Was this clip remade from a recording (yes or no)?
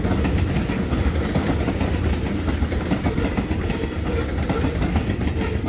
no